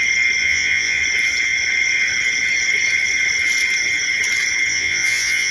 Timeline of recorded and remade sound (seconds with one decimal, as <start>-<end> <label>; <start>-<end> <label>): 0.0-0.4 recorded; 0.4-1.0 remade; 1.0-4.7 recorded; 4.7-5.5 remade